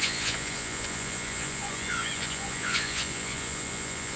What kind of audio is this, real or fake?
fake